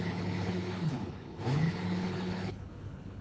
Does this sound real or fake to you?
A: fake